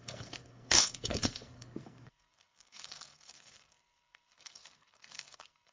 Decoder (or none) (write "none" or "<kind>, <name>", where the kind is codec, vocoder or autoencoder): codec, SNAC